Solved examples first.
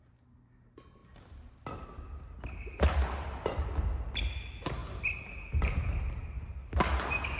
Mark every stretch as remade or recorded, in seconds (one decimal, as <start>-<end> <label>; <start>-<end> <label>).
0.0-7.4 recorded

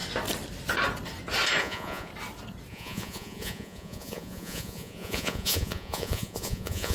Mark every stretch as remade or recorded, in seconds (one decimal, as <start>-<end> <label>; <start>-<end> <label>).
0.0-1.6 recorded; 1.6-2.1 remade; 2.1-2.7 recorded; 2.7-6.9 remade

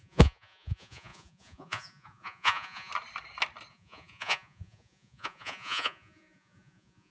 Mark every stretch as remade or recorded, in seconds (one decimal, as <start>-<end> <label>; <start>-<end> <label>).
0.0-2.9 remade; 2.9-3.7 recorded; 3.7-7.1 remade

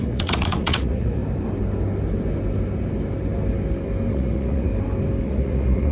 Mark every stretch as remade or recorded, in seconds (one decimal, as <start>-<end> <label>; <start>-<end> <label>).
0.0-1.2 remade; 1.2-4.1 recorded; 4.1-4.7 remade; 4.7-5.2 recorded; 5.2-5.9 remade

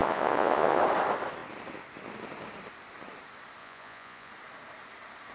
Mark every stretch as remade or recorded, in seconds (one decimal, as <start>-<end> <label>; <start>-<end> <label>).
0.0-0.8 remade; 0.8-3.6 recorded; 3.6-4.3 remade; 4.3-5.3 recorded

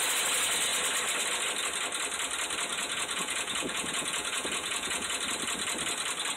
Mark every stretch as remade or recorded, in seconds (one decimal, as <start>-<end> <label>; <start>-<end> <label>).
0.0-2.7 recorded; 2.7-5.2 remade; 5.2-6.4 recorded

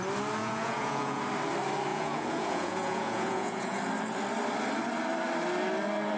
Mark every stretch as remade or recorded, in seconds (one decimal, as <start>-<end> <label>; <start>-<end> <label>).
0.0-0.4 recorded; 0.4-1.2 remade; 1.2-1.9 recorded; 1.9-3.8 remade; 3.8-6.2 recorded